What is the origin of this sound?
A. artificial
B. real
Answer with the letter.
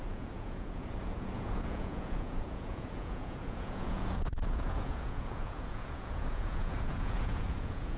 A